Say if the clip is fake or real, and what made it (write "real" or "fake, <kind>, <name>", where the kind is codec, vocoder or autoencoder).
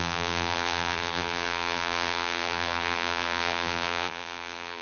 fake, vocoder, BigVGAN v2